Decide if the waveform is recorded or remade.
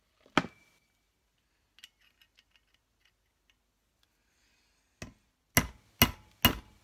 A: recorded